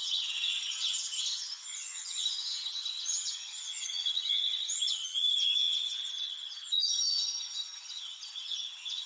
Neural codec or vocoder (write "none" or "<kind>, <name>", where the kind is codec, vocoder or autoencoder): vocoder, HiFi-GAN